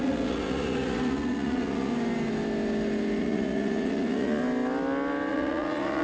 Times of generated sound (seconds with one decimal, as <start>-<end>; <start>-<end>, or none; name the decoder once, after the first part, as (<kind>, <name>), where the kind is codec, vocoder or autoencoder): 0.0-1.9 (vocoder, Vocos); 3.2-4.4; 5.3-6.0